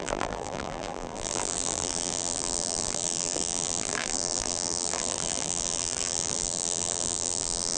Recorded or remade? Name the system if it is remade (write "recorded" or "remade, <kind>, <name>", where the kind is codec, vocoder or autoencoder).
remade, vocoder, BigVGAN v2